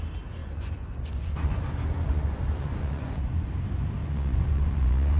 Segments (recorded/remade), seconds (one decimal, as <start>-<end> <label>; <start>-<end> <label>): 0.0-0.4 recorded; 0.4-3.5 remade; 3.5-4.0 recorded; 4.0-5.2 remade